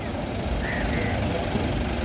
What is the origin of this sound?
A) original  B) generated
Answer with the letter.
A